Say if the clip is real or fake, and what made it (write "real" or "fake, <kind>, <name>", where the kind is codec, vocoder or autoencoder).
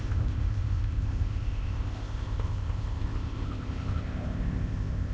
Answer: fake, codec, ZipCodec